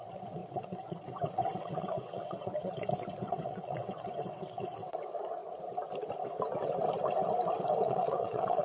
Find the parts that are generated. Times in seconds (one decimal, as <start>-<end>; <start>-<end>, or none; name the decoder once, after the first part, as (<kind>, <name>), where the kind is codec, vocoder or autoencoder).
0.0-5.4 (vocoder, WaveNeXt); 7.8-8.6